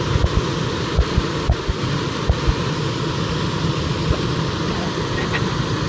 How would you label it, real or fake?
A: real